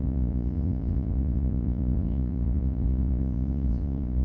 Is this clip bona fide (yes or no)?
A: no